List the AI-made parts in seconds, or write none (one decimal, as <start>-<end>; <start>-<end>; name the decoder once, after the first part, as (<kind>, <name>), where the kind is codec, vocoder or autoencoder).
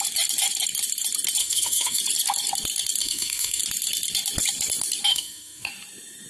1.4-2.0 (autoencoder, DAC-VAE); 3.0-3.6; 5.1-5.7